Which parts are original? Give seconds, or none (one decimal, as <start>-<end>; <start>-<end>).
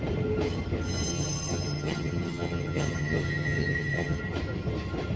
0.0-1.1; 4.2-5.2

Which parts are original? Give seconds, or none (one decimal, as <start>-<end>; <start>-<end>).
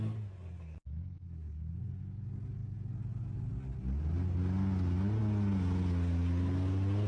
0.0-7.1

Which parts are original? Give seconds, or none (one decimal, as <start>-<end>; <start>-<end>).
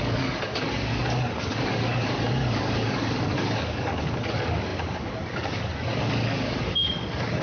none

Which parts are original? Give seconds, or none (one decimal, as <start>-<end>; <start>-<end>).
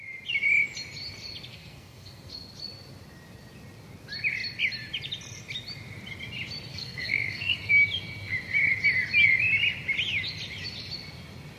0.0-1.5; 2.3-6.7; 7.7-11.6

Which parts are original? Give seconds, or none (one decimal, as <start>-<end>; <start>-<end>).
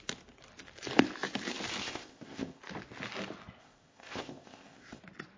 0.0-1.8; 2.6-3.6; 5.0-5.4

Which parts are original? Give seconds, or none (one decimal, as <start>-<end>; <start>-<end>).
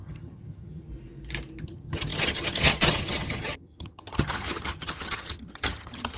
0.9-1.6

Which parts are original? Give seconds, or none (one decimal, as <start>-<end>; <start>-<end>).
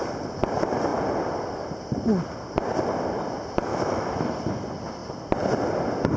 0.0-3.7; 4.3-6.2